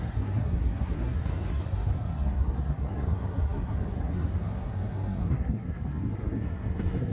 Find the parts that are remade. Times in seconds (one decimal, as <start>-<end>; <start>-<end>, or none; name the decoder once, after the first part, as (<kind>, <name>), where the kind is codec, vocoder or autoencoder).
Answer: 0.0-7.1 (codec, SNAC)

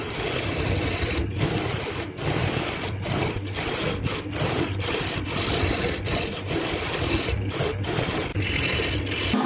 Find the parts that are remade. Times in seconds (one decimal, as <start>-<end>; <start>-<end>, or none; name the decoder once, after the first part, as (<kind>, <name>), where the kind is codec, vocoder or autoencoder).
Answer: none

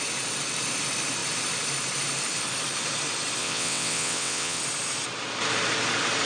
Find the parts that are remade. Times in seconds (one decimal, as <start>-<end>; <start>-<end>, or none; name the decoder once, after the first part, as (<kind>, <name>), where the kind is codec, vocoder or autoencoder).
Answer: 3.4-4.6 (vocoder, WaveNeXt)

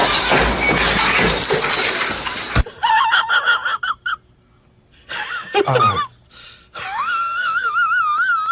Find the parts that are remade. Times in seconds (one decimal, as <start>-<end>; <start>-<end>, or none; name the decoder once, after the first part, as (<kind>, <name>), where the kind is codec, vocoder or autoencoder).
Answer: 7.4-8.0 (codec, DAC)

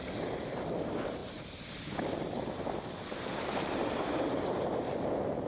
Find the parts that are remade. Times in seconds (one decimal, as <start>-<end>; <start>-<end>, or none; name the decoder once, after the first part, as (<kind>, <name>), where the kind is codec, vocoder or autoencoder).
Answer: 0.0-5.5 (vocoder, BigVGAN v2)

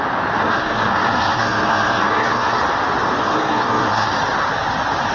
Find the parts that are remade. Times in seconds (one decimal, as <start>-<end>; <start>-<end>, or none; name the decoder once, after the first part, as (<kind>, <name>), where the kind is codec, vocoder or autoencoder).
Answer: 0.4-2.6 (codec, SNAC); 3.2-4.1

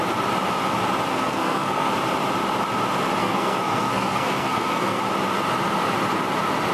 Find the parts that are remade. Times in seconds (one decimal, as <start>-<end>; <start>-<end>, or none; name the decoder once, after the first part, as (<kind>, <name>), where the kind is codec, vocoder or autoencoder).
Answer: 1.1-1.9 (codec, SNAC); 3.2-5.0

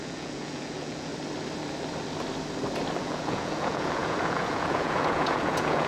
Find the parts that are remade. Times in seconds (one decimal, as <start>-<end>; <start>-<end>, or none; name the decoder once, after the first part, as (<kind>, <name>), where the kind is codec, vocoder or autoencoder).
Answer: 0.0-1.1 (vocoder, Vocos); 3.0-5.9